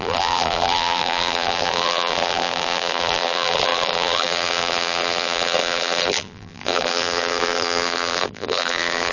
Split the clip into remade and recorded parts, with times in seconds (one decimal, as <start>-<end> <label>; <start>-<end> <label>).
0.0-9.1 remade